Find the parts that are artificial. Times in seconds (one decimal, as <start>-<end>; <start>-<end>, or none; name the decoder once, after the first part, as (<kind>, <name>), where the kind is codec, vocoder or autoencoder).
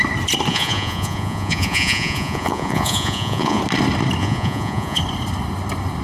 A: 0.5-3.6 (vocoder, Vocos); 4.2-5.0